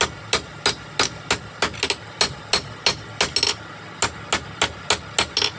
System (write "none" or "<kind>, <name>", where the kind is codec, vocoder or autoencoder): none